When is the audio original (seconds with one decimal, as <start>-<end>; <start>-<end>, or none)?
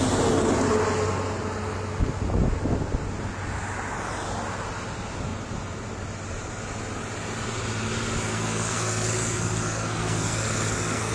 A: 0.0-8.3